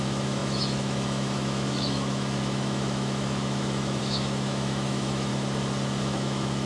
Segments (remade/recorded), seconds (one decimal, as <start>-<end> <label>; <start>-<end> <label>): 0.0-5.3 remade; 5.3-6.0 recorded; 6.0-6.7 remade